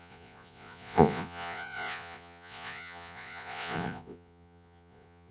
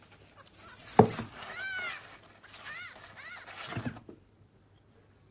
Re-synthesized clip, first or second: first